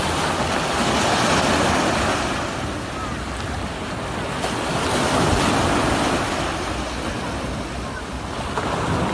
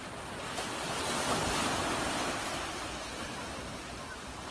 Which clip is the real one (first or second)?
first